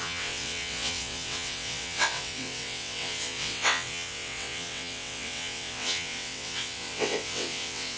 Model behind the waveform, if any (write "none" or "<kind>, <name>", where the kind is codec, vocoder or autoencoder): vocoder, WaveNeXt